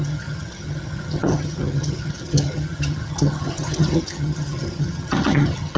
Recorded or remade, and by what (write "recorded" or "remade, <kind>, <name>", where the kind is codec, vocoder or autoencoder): remade, vocoder, HiFi-GAN